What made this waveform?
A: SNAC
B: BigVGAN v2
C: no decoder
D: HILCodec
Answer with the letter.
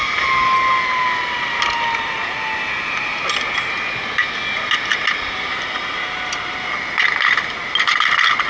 C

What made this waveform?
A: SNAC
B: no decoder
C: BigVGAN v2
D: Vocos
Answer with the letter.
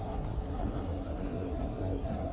A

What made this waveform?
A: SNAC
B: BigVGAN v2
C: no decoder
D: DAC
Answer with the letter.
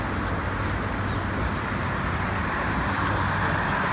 C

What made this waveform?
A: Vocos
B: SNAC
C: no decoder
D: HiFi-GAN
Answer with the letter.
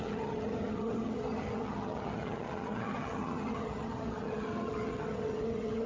D